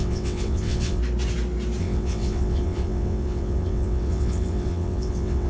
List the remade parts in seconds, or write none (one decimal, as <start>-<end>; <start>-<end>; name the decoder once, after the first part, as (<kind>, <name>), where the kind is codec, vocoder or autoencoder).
0.0-1.0 (vocoder, WaveNeXt); 1.8-5.5